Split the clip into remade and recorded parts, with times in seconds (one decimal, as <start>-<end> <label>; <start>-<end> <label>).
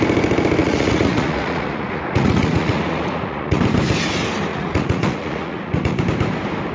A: 0.0-0.6 recorded; 0.6-3.6 remade; 3.6-4.5 recorded; 4.5-6.0 remade; 6.0-6.7 recorded